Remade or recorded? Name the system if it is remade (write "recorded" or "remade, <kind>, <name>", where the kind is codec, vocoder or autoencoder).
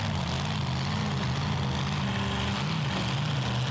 recorded